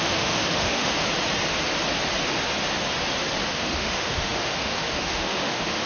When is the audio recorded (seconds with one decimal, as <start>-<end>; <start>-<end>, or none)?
0.9-3.5